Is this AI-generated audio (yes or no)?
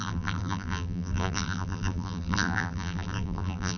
yes